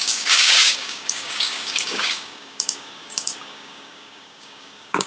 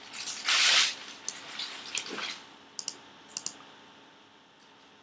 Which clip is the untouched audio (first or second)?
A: second